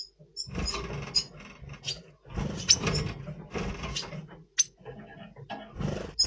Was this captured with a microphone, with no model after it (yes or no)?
yes